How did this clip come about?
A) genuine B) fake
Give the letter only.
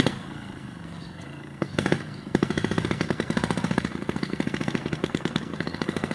B